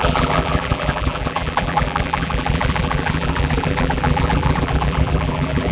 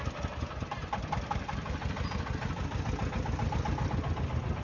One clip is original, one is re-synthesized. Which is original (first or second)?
second